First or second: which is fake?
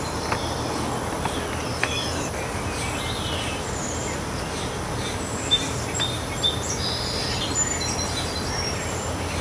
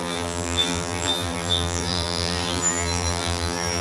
second